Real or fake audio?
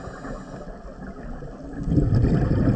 real